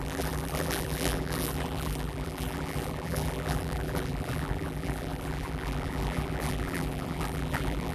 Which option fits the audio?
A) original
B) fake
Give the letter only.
B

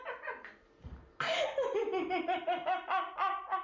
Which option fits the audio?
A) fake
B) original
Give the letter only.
B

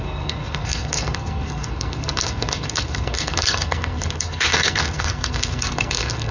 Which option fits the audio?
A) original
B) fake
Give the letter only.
B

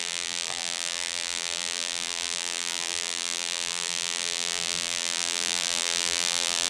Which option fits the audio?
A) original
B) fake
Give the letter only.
B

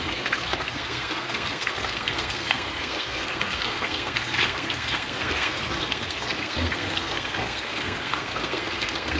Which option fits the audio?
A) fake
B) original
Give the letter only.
A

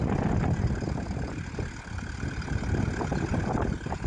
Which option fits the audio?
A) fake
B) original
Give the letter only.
B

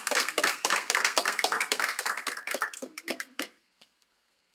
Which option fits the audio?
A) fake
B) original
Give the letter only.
A